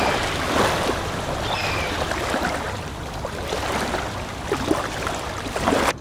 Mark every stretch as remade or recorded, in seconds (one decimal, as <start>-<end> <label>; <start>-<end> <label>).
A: 0.0-6.0 recorded

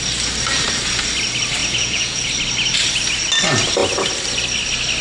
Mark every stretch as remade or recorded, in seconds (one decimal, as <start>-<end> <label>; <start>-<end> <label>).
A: 0.0-1.6 recorded; 1.6-2.3 remade; 2.3-5.0 recorded

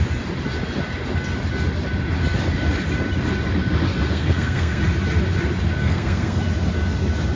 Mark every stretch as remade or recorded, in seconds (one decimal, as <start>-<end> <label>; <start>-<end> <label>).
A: 0.0-4.1 recorded; 4.1-4.8 remade; 4.8-5.8 recorded; 5.8-6.4 remade; 6.4-7.4 recorded

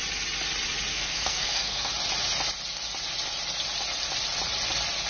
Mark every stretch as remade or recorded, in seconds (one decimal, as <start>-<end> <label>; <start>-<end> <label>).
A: 0.0-0.9 recorded; 0.9-1.9 remade; 1.9-5.1 recorded

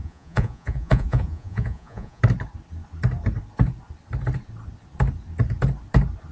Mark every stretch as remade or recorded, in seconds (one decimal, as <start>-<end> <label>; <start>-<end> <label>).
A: 0.0-2.2 remade; 2.2-6.3 recorded

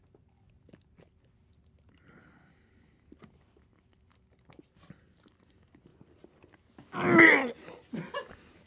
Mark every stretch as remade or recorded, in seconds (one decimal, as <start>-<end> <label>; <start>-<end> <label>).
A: 0.0-8.7 recorded